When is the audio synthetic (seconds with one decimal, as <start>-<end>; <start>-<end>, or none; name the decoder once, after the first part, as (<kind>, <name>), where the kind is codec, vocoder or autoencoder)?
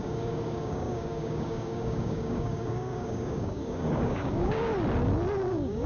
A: 0.0-4.7 (codec, DAC); 5.5-5.9